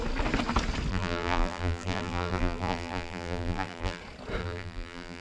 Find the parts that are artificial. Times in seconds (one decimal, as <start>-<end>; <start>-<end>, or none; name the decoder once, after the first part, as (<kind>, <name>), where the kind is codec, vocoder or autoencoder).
0.9-4.0 (vocoder, BigVGAN v2); 4.4-5.2